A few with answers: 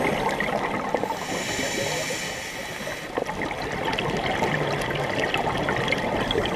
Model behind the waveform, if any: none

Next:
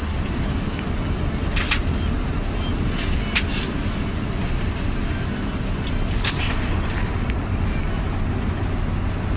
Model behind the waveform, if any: none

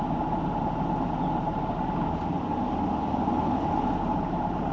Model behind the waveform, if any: none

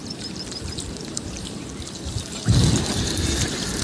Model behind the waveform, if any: vocoder, BigVGAN v2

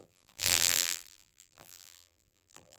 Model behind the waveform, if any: vocoder, BigVGAN v2